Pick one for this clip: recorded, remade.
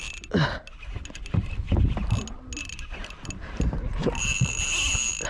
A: recorded